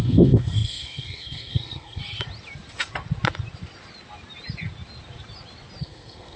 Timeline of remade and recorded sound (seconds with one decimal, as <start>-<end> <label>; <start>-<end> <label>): 0.0-2.0 remade; 2.0-5.8 recorded; 5.8-6.4 remade